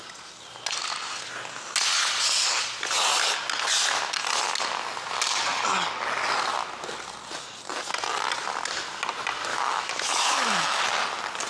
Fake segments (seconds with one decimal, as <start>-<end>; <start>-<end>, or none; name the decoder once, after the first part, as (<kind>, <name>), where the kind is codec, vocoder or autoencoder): 9.5-10.8 (autoencoder, DAC-VAE)